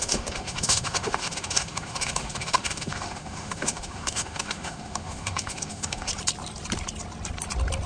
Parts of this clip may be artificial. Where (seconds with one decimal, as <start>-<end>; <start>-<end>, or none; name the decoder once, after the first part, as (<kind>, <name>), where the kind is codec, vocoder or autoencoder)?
0.0-6.1 (autoencoder, DAC-VAE)